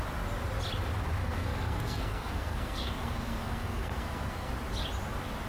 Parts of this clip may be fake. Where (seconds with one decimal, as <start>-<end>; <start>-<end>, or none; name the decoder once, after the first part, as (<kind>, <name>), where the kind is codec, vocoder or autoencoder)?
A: 1.2-4.5 (codec, SNAC)